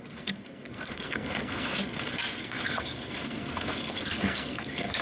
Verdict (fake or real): fake